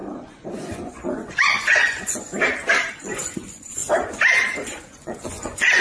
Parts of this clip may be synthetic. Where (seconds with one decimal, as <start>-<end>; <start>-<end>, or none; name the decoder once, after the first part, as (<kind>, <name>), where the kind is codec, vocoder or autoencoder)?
0.0-2.3 (vocoder, Vocos); 2.9-3.8; 4.8-5.8